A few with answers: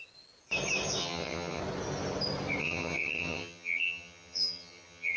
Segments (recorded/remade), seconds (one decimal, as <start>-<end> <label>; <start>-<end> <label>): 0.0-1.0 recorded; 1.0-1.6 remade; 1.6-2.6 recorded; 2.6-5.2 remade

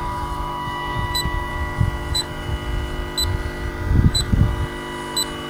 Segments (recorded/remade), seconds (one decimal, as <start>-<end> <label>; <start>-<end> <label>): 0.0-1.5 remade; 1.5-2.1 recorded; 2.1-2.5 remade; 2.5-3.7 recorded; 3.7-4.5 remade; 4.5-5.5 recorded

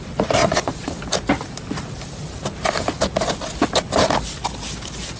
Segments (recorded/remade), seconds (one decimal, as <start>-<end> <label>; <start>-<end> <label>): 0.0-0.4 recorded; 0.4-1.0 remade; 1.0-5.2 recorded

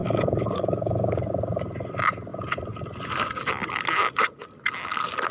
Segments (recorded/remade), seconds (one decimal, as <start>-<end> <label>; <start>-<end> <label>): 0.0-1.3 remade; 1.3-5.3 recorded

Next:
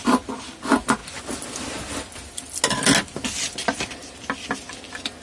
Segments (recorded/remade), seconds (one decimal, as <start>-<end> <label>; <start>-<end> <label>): 0.0-5.2 recorded

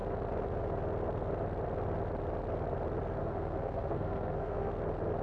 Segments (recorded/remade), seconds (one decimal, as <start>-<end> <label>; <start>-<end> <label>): 0.0-3.2 recorded; 3.2-4.7 remade; 4.7-5.2 recorded

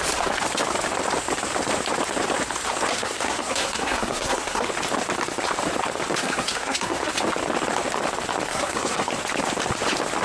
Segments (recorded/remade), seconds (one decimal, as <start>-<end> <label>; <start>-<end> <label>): 0.0-2.9 recorded; 2.9-4.7 remade; 4.7-6.2 recorded; 6.2-7.1 remade; 7.1-8.5 recorded; 8.5-9.1 remade; 9.1-10.2 recorded

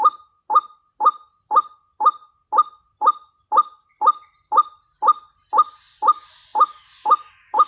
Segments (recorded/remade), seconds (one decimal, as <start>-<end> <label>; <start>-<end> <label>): 0.0-7.7 recorded